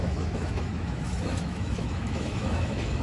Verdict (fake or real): fake